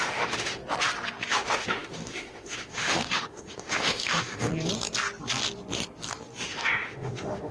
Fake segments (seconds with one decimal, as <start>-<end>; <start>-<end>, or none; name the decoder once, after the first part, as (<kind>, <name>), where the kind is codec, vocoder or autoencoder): 0.0-0.6 (autoencoder, DAC-VAE); 1.3-4.5; 6.4-7.5